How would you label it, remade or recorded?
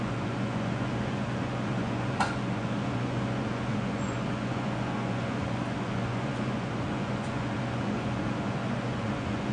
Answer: remade